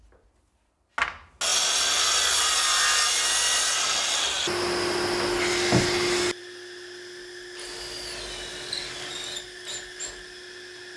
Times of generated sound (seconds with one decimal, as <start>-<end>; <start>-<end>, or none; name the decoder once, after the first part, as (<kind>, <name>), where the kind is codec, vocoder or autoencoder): none